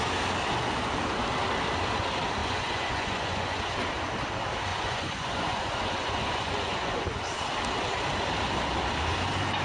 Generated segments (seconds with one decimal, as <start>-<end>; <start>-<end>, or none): 2.4-3.7; 4.7-7.2

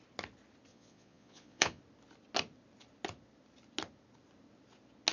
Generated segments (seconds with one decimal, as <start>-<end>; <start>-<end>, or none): 0.7-1.8

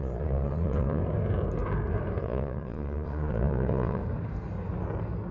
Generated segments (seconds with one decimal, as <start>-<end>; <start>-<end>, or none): 0.0-1.0; 2.2-4.0

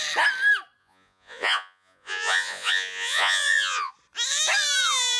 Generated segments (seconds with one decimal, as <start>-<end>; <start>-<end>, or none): 0.8-3.9

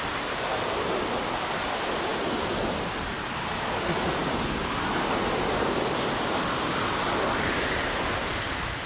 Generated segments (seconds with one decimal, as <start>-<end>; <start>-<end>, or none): none